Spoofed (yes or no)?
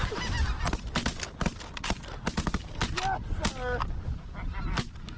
no